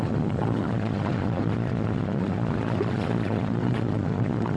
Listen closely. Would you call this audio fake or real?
fake